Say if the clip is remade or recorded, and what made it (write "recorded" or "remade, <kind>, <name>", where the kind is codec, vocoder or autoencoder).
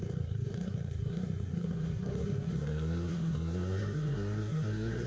remade, codec, SNAC